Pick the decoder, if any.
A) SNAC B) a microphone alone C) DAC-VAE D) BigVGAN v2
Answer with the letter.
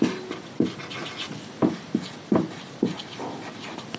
B